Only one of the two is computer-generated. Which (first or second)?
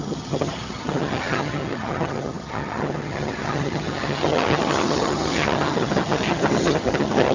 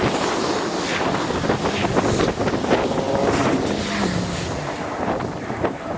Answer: first